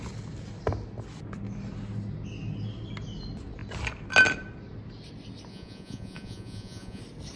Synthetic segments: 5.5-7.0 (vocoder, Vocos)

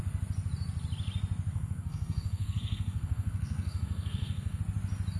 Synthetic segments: 1.5-4.6 (codec, SNAC)